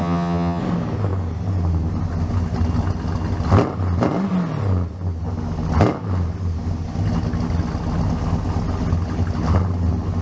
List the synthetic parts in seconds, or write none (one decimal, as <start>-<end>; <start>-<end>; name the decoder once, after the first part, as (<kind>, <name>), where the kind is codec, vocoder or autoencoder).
0.0-0.6 (vocoder, HiFi-GAN)